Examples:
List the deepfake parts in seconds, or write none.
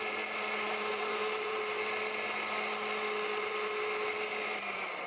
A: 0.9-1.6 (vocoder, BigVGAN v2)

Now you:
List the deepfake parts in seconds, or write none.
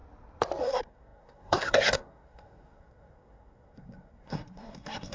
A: 0.6-5.1 (codec, SNAC)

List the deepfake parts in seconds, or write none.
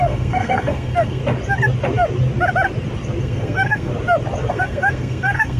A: 0.0-1.2 (codec, SNAC); 3.2-3.9; 4.5-5.6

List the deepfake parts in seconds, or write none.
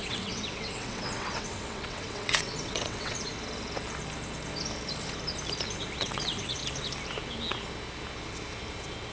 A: 0.0-3.3 (vocoder, WaveNeXt); 6.0-6.6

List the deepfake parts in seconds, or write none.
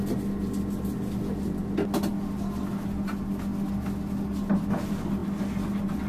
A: none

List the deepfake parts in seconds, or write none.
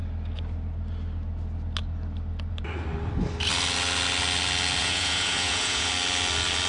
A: 4.8-5.9 (vocoder, Vocos)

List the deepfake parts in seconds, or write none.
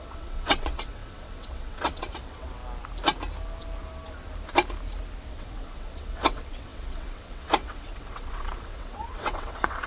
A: 0.0-2.6 (vocoder, WaveNeXt); 5.3-9.9